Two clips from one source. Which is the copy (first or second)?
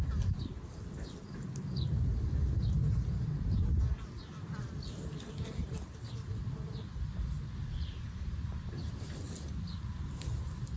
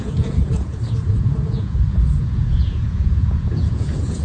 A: second